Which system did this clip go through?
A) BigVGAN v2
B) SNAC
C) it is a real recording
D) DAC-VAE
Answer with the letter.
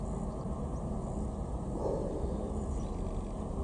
C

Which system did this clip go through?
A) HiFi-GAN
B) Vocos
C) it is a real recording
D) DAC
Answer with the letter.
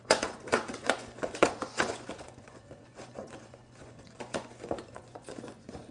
B